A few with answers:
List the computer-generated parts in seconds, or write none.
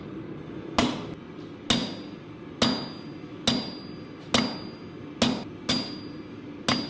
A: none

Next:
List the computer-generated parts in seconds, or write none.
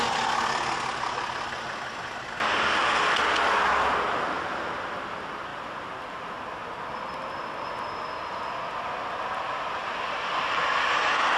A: none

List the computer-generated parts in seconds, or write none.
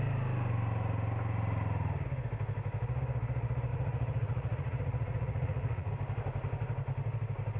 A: 3.7-5.9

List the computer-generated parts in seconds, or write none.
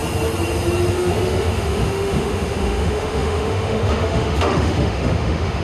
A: 0.9-5.6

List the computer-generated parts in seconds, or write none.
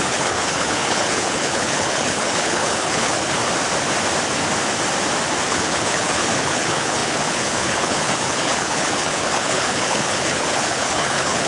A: 0.0-3.4; 5.5-11.5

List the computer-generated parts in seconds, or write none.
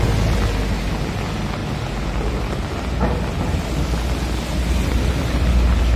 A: none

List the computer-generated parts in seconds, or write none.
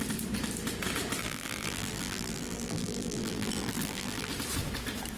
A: 1.2-4.3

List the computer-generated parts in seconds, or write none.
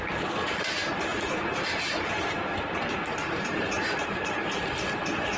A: 1.1-4.3